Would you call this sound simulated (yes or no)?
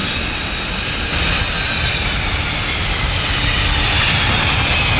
no